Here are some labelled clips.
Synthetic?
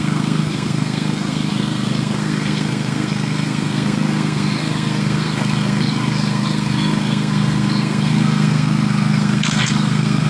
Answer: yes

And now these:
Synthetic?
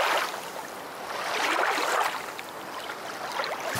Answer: no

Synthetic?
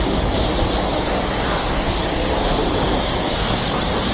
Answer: no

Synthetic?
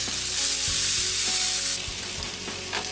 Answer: no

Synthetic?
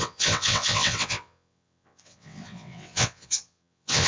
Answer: yes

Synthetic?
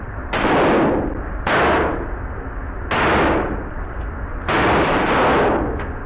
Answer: no